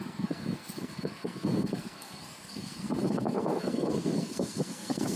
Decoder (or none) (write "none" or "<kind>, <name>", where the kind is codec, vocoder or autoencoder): codec, SNAC